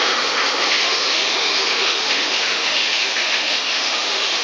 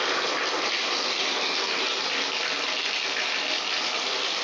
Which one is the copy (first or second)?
first